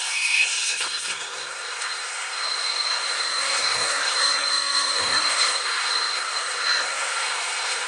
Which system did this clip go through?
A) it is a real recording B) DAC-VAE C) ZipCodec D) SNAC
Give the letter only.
D